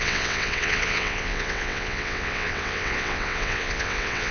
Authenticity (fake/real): fake